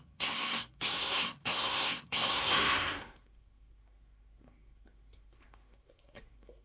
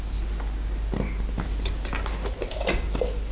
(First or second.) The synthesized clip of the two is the first